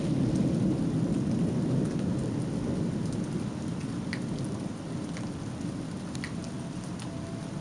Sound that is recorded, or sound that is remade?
recorded